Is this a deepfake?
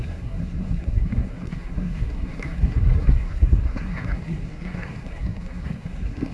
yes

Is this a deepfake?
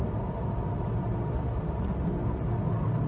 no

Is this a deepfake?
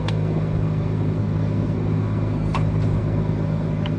yes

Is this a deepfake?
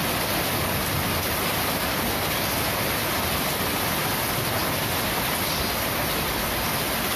no